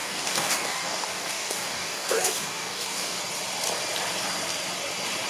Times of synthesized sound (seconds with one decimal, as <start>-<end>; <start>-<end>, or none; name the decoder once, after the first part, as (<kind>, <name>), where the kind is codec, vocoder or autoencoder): 0.0-3.2 (codec, DAC)